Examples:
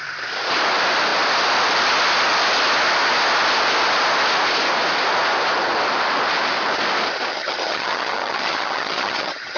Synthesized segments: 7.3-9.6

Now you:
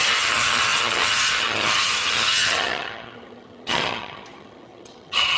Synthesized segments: 0.0-5.4

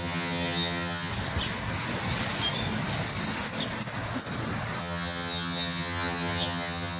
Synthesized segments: 0.0-1.1; 4.8-7.0

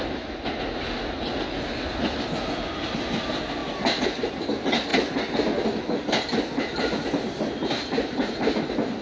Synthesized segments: none

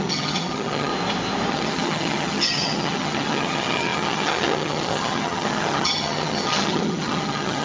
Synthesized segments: 0.0-0.9; 1.5-7.6

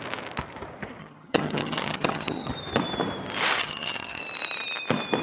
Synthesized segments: 1.0-2.5; 3.6-4.2

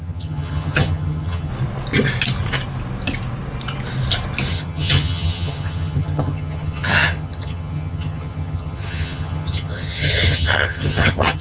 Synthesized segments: 0.0-1.5; 4.5-11.4

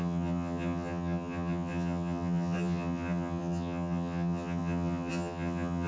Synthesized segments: 0.0-5.9